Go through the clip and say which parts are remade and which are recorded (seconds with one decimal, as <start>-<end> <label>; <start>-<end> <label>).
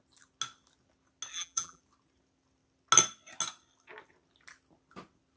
0.0-1.3 recorded; 1.3-1.8 remade; 1.8-5.4 recorded